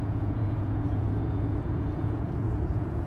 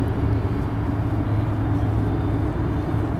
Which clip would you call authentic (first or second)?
second